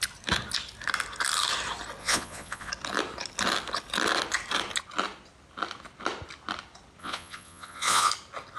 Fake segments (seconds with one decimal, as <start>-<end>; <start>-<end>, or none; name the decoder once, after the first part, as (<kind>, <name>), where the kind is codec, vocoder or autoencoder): 2.0-2.7 (vocoder, Vocos); 7.0-8.1